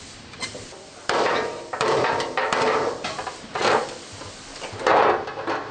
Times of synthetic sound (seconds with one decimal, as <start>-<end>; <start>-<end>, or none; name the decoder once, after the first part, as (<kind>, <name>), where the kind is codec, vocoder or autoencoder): 0.4-3.8 (vocoder, BigVGAN v2); 4.5-5.1